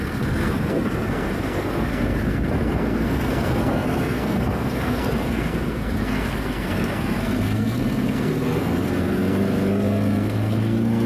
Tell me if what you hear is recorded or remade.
remade